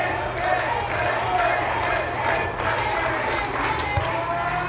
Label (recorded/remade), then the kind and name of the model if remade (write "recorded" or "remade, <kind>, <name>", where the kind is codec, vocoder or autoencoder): recorded